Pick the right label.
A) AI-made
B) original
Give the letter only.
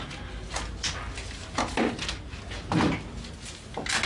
B